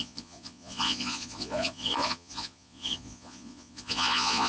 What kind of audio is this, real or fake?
fake